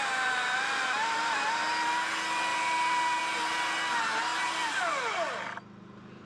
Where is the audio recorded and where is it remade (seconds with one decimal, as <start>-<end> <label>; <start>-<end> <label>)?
0.0-2.5 recorded; 2.5-3.2 remade; 3.2-4.3 recorded; 4.3-4.9 remade; 4.9-6.3 recorded